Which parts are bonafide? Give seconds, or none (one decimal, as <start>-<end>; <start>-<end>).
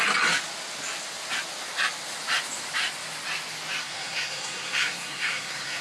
0.0-3.8